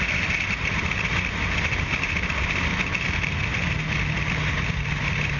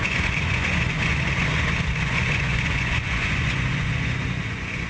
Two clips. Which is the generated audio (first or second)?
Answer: second